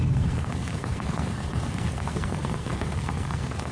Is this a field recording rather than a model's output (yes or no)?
no